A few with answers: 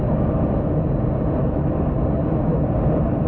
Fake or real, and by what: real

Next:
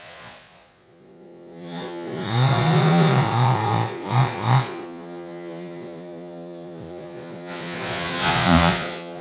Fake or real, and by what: fake, vocoder, Vocos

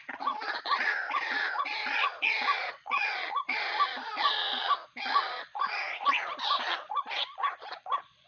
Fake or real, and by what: fake, vocoder, Vocos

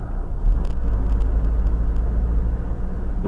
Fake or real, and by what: real